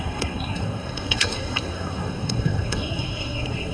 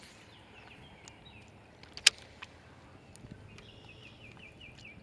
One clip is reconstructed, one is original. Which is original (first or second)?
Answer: second